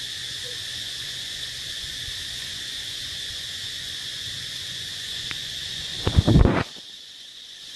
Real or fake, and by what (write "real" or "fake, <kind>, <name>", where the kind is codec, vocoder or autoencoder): fake, vocoder, Vocos